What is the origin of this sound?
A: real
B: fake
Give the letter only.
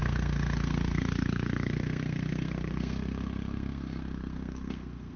B